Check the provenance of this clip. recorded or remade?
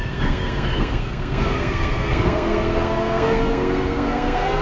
remade